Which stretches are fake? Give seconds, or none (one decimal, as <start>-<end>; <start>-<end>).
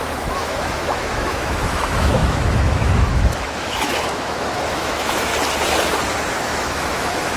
0.0-5.3; 6.4-7.4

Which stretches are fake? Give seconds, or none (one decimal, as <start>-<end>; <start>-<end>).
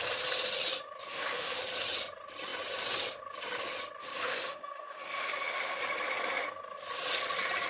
1.1-1.6; 4.0-5.8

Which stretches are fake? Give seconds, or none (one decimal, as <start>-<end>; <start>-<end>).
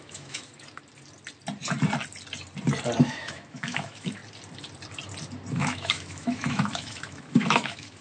0.0-0.5; 3.0-4.2; 5.5-8.0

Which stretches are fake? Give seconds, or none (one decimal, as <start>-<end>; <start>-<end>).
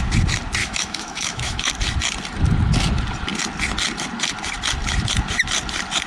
0.6-1.7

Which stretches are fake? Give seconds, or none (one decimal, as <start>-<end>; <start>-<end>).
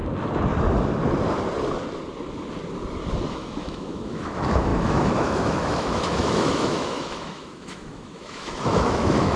3.3-9.4